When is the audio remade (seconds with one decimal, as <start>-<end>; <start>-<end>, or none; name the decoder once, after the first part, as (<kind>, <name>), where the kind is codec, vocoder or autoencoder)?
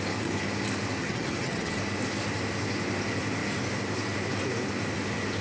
1.0-1.8 (vocoder, HiFi-GAN)